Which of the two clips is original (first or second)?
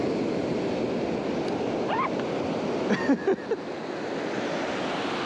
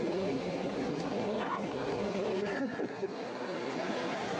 first